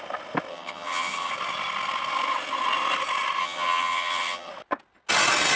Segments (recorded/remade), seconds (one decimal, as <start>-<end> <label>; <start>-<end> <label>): 0.0-0.5 recorded; 0.5-1.3 remade; 1.3-3.4 recorded; 3.4-4.5 remade; 4.5-5.6 recorded